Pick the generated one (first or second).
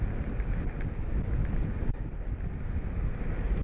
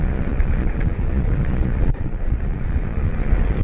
second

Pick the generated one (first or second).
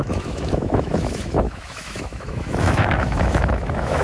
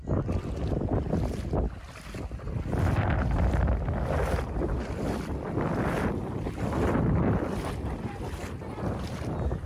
first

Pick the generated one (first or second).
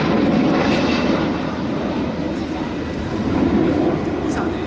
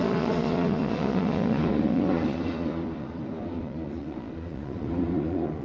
second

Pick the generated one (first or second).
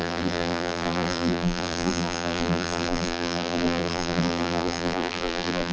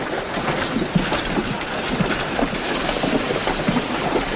first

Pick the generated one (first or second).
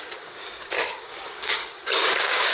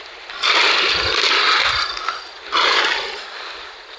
first